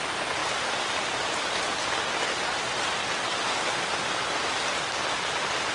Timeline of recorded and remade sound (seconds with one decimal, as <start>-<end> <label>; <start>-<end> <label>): 0.0-5.7 recorded